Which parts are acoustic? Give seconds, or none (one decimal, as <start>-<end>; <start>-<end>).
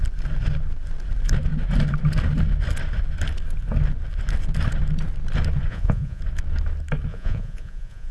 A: 0.0-5.7; 6.2-7.1